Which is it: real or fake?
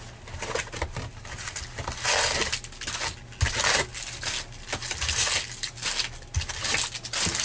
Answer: real